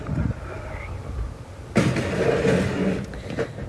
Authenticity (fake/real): real